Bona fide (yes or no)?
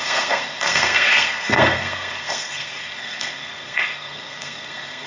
no